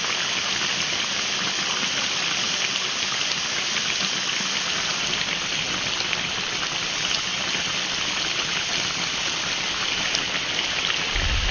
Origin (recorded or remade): recorded